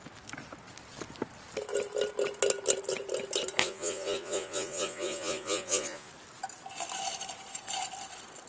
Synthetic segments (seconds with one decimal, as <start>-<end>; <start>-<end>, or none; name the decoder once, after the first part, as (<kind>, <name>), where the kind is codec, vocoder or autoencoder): 3.6-6.1 (vocoder, Vocos)